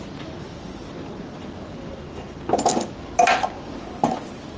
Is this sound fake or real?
real